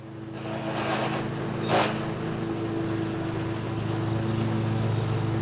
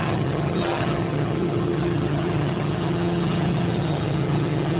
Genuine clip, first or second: first